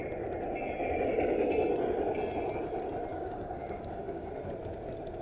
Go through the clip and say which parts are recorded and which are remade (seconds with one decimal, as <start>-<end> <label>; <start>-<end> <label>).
0.0-3.1 recorded; 3.1-4.3 remade; 4.3-5.2 recorded